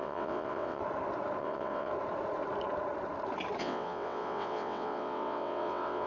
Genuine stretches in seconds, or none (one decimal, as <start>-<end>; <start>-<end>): 0.8-1.4; 1.9-3.6